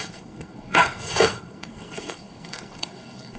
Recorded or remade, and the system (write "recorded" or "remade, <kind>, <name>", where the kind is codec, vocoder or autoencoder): remade, codec, SNAC